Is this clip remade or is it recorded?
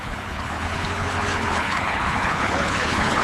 remade